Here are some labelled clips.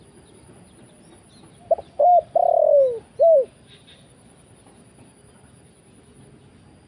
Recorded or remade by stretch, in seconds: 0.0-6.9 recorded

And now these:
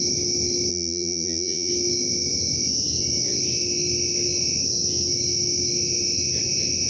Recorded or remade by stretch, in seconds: 0.0-0.7 recorded; 0.7-1.7 remade; 1.7-6.9 recorded

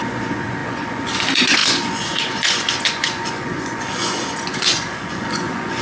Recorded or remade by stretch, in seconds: 0.0-5.8 remade

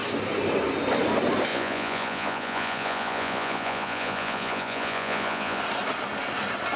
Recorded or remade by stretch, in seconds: 0.0-1.5 recorded; 1.5-5.6 remade; 5.6-6.8 recorded